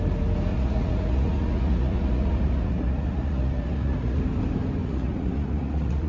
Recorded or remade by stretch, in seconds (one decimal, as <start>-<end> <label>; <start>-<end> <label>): 0.0-0.5 recorded; 0.5-4.2 remade; 4.2-4.8 recorded; 4.8-6.1 remade